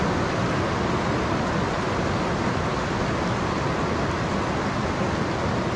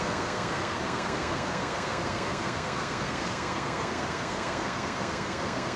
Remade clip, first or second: second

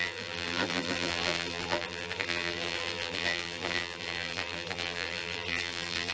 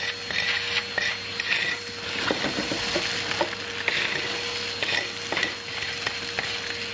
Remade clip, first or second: first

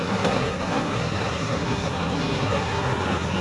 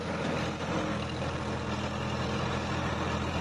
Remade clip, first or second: first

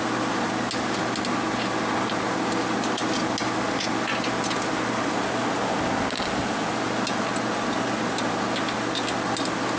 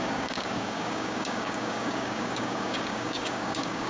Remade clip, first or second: second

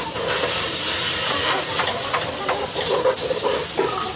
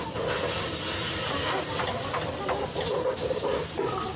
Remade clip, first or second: first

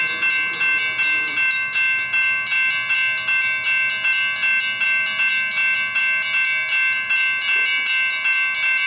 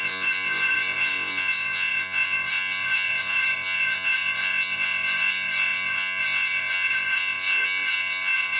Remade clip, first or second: second